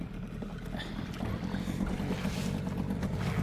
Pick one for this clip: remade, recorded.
recorded